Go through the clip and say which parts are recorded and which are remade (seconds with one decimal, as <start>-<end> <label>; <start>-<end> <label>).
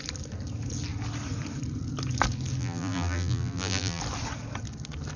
0.0-2.6 recorded; 2.6-4.0 remade; 4.0-5.2 recorded